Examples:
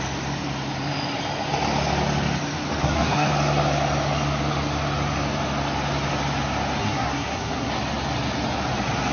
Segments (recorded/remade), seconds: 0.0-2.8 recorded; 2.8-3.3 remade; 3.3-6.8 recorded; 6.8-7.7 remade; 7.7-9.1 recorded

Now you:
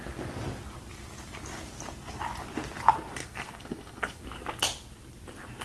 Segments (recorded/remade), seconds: 0.0-3.2 recorded; 3.2-4.2 remade; 4.2-5.6 recorded

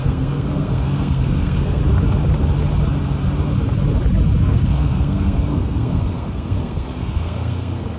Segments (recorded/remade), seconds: 0.0-1.8 remade; 1.8-4.4 recorded; 4.4-8.0 remade

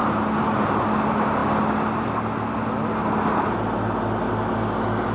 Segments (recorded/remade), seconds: 0.0-5.1 recorded